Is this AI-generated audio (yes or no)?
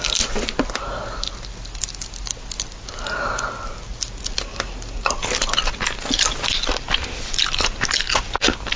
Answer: no